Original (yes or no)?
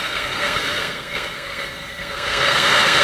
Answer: no